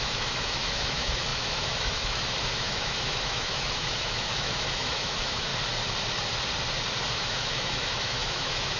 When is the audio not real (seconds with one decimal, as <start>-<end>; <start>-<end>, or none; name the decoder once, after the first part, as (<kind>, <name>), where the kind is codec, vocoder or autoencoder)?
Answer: 0.0-5.5 (autoencoder, DAC-VAE); 7.1-8.8